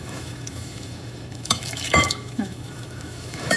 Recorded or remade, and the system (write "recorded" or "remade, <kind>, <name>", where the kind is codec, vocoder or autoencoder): remade, autoencoder, DAC-VAE